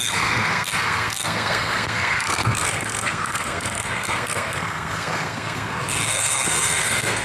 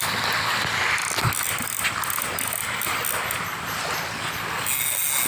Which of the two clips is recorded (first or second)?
second